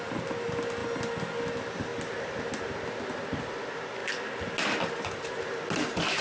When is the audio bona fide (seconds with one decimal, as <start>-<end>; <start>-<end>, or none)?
0.0-6.2